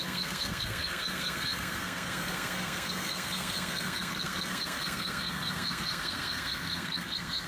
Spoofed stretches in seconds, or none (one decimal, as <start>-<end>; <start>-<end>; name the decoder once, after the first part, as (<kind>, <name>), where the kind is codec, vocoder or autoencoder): 0.0-7.5 (codec, SNAC)